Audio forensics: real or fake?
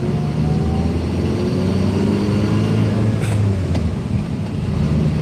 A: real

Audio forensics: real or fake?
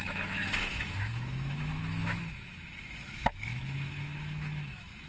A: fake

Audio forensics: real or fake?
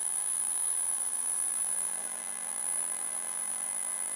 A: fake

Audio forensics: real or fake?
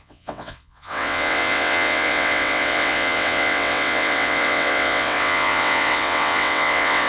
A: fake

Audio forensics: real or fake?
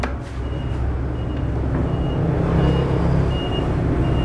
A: real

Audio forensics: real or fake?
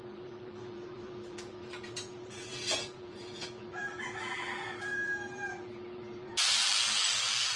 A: fake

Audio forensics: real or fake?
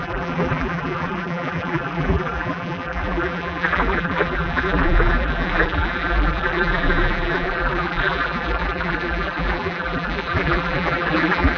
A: fake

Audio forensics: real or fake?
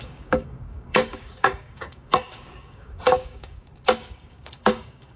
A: fake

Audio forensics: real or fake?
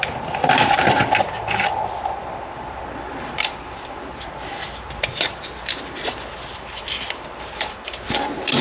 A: fake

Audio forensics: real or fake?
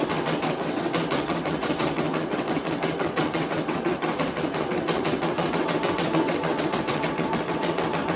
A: fake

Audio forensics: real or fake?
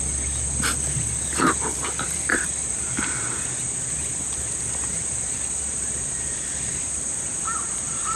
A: fake